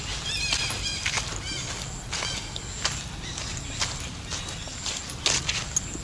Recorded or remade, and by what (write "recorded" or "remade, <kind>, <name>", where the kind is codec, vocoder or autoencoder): recorded